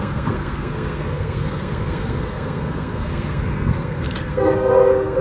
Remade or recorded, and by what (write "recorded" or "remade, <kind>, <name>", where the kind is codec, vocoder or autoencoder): remade, codec, SNAC